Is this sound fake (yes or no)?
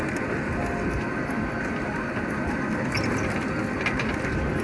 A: no